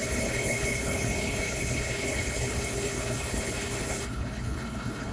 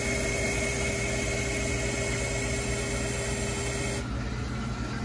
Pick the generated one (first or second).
first